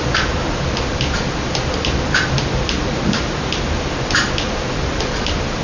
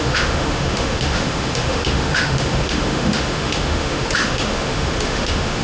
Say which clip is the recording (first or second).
first